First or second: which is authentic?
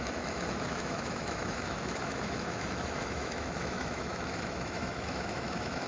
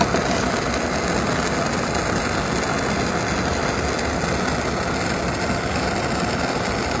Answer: second